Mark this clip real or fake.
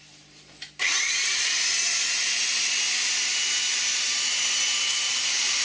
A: real